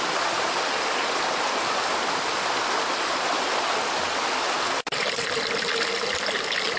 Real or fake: real